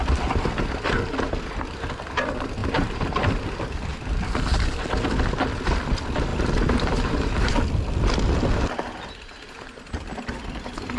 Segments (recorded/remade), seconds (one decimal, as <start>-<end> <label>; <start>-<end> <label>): 0.0-2.6 recorded; 2.6-3.9 remade; 3.9-6.3 recorded; 6.3-7.5 remade; 7.5-11.0 recorded